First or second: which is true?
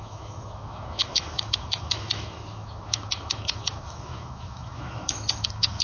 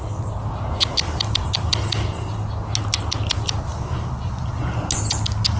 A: second